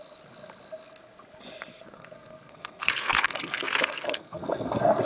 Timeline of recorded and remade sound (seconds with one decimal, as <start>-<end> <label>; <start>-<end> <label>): 0.0-1.7 recorded; 1.7-5.0 remade